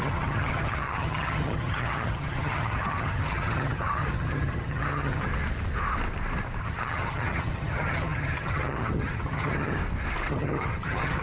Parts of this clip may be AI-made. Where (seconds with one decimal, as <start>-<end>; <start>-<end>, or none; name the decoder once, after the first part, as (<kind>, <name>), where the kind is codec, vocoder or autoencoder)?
0.0-5.3 (vocoder, HiFi-GAN); 6.6-9.8; 10.3-11.2